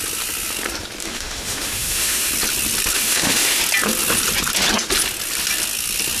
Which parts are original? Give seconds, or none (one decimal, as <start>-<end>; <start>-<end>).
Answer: 0.0-1.0; 2.3-2.9; 3.6-6.2

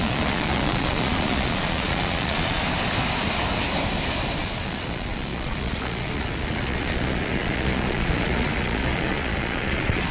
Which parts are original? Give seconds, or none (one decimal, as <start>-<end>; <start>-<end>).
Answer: 2.6-4.4